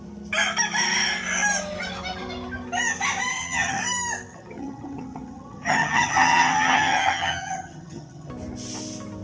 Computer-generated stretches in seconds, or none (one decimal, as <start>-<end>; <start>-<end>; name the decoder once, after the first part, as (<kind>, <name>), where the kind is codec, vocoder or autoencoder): 3.3-3.8 (vocoder, HiFi-GAN); 4.3-8.3

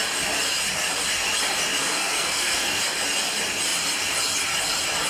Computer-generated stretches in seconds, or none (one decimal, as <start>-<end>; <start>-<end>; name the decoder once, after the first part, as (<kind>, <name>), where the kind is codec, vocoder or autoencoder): 1.8-2.8 (codec, SNAC)